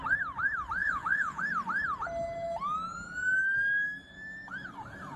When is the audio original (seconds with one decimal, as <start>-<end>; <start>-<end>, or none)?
0.0-0.8; 1.4-5.2